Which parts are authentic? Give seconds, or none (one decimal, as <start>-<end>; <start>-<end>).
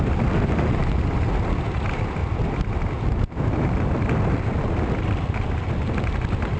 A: 0.0-6.6